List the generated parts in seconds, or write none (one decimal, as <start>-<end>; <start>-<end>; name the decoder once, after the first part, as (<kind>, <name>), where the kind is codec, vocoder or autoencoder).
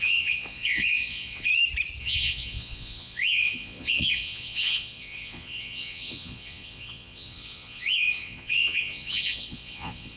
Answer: 0.0-1.5 (vocoder, Vocos); 2.0-10.2